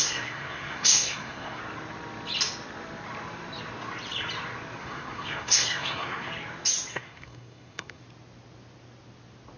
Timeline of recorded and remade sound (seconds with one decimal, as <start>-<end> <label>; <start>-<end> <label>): 0.0-1.6 remade; 1.6-4.8 recorded; 4.8-6.3 remade; 6.3-6.9 recorded; 6.9-8.0 remade; 8.0-9.6 recorded